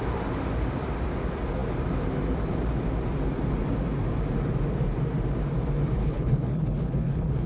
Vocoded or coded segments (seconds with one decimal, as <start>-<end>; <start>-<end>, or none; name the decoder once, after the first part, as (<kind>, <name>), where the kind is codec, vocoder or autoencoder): 6.0-7.5 (codec, HILCodec)